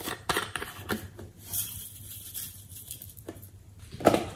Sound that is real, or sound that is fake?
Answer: fake